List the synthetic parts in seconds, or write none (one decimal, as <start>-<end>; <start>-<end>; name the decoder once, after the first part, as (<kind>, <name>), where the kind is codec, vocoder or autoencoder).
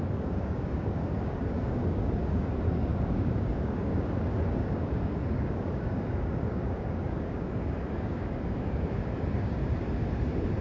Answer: 0.0-9.6 (codec, DAC)